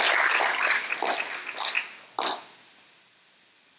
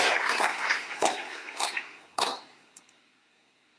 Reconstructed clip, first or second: second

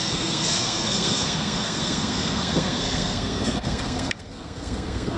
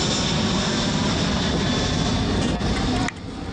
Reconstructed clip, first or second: first